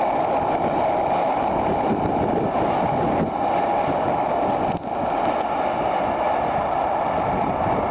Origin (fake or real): real